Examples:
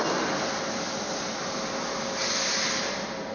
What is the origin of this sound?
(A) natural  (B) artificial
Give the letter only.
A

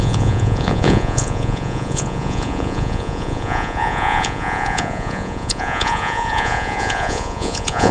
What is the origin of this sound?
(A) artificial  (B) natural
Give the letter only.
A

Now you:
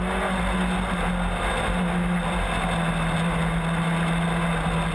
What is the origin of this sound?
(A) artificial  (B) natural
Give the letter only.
B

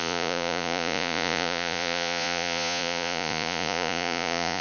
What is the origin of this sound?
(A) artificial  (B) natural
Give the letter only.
A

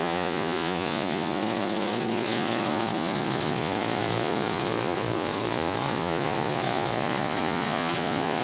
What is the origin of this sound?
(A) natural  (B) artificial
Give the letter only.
B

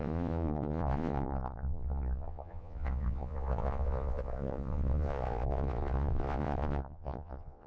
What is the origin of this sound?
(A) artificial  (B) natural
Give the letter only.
A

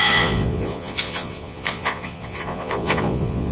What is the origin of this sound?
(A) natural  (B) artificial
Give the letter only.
B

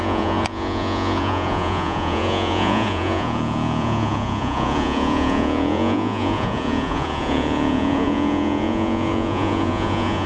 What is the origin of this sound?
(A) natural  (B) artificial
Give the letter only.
B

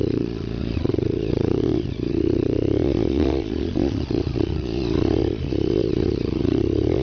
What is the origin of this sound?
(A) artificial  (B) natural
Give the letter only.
A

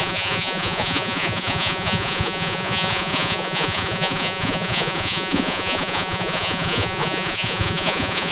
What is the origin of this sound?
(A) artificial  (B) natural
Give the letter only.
A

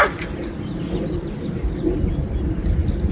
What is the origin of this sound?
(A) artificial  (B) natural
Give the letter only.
B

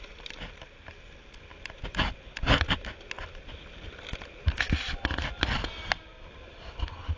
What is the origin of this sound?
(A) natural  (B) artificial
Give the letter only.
A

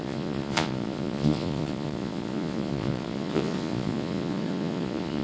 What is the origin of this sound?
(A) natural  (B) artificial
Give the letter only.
B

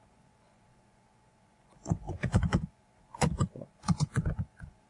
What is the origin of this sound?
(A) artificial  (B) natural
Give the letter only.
A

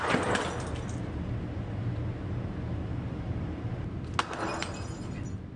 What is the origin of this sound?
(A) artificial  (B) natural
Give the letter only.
B